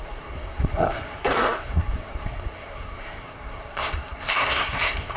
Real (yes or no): no